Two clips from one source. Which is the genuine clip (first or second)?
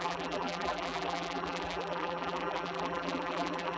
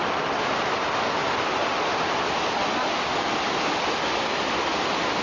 second